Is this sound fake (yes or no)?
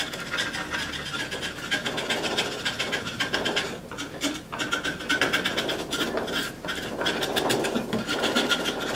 no